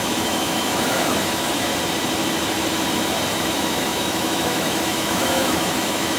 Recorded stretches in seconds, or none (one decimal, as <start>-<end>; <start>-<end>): 1.7-3.4